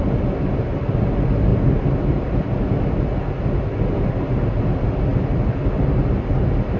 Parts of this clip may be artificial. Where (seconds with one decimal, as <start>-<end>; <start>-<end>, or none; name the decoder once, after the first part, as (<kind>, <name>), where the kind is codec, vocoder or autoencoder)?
none